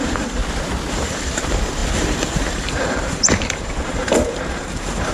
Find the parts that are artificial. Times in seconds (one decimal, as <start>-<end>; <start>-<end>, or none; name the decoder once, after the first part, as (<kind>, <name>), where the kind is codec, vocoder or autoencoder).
0.0-0.4 (vocoder, BigVGAN v2); 0.9-5.1